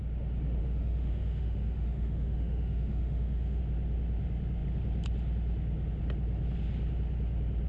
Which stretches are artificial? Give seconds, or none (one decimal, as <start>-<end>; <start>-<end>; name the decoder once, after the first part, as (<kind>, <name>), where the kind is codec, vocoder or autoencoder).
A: 0.6-3.6 (autoencoder, DAC-VAE)